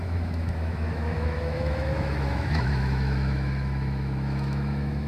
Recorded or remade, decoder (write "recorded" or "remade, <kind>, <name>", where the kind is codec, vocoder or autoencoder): remade, autoencoder, DAC-VAE